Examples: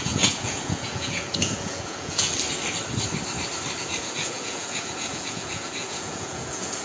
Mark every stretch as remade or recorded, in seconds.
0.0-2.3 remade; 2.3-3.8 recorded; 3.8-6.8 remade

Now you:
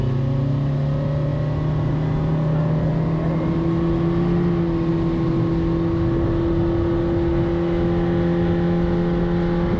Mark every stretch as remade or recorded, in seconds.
0.0-9.8 recorded

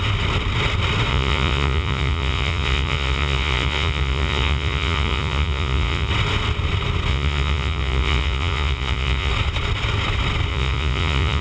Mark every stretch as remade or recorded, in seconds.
0.0-1.1 recorded; 1.1-6.1 remade; 6.1-7.1 recorded; 7.1-9.3 remade; 9.3-10.5 recorded; 10.5-11.4 remade